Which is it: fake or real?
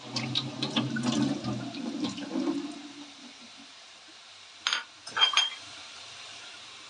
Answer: fake